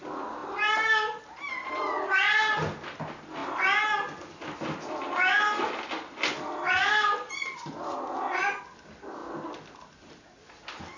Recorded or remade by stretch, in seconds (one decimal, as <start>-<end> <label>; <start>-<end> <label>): 0.0-11.0 recorded